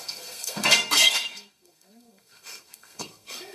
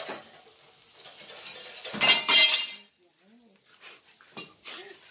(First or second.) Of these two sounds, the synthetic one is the first